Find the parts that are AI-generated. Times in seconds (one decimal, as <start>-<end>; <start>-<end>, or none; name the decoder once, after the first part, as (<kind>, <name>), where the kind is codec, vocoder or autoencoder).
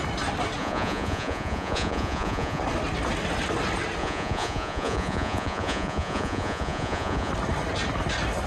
0.6-2.6 (vocoder, Vocos); 4.0-7.3